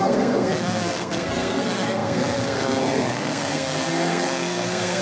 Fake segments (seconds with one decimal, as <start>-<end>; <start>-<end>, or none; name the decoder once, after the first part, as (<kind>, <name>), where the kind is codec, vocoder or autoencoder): 0.0-5.0 (codec, SNAC)

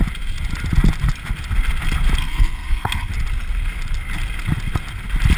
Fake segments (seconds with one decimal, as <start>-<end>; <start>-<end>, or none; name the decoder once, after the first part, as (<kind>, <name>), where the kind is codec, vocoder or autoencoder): 2.2-3.1 (codec, SNAC)